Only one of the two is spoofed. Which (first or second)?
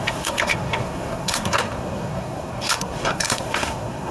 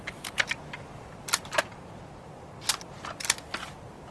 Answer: first